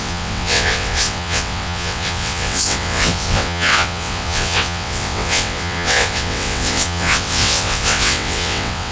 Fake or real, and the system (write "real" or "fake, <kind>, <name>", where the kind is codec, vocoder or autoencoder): fake, vocoder, WaveNeXt